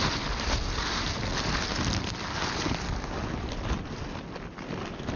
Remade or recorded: recorded